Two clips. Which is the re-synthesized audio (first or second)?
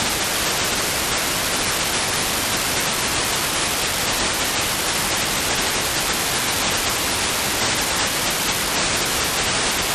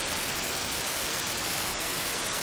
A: second